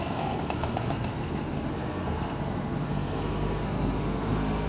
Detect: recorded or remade remade